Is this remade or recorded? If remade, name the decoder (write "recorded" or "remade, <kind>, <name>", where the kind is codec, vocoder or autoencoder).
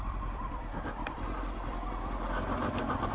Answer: remade, vocoder, BigVGAN v2